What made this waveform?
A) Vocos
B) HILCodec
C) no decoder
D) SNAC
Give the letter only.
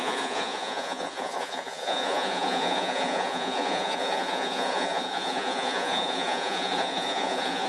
A